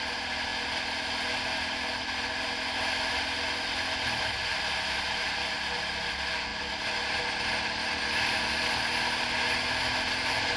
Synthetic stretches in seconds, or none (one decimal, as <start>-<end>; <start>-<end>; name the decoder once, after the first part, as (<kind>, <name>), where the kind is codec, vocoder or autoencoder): none